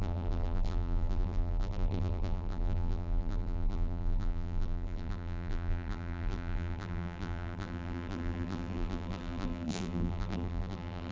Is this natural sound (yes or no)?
no